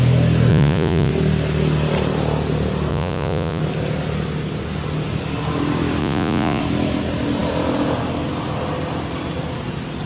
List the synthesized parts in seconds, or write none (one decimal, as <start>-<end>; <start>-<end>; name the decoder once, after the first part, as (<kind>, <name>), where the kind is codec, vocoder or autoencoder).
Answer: 0.5-1.1 (vocoder, Vocos); 2.9-3.6; 6.0-6.6